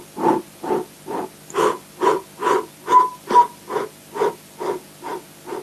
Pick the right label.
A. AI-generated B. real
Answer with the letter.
B